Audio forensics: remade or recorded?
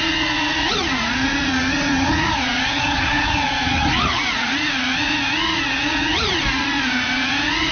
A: remade